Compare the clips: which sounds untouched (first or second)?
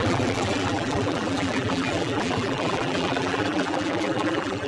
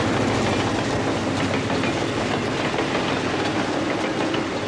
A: second